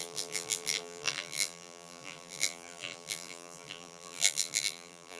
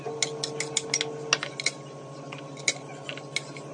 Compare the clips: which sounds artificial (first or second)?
first